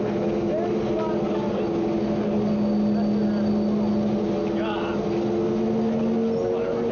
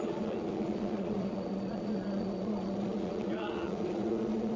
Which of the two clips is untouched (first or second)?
first